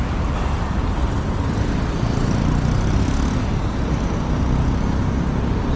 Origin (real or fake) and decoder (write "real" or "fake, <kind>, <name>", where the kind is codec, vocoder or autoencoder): real